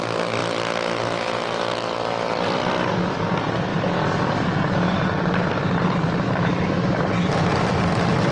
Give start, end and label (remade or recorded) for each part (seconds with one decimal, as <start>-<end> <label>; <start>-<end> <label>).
0.0-8.3 recorded